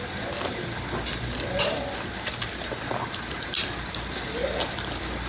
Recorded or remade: recorded